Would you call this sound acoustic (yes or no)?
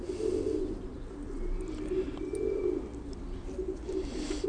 yes